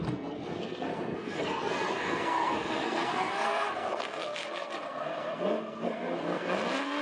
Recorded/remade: remade